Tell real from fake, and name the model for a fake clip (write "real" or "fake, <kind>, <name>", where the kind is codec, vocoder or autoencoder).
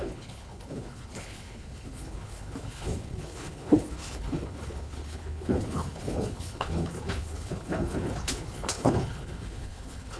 fake, codec, HILCodec